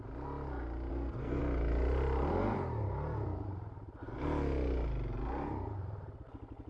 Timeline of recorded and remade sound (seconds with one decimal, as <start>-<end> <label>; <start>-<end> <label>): 0.0-0.9 recorded; 0.9-1.4 remade; 1.4-6.7 recorded